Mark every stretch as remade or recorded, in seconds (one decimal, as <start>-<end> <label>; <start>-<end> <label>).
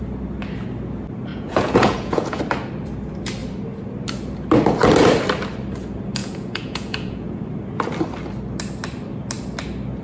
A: 0.0-1.3 recorded; 1.3-2.4 remade; 2.4-6.2 recorded; 6.2-7.4 remade; 7.4-10.0 recorded